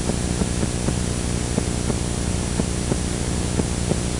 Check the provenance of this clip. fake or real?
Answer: real